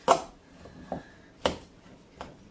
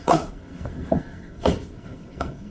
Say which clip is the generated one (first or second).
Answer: second